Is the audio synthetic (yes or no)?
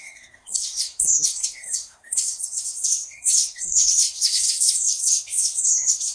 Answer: yes